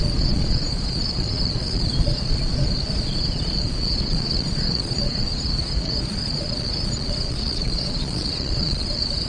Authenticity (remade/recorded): remade